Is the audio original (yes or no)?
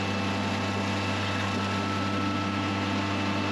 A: yes